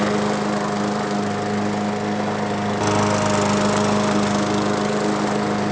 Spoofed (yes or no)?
no